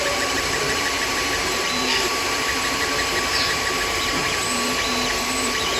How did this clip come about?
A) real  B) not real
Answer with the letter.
B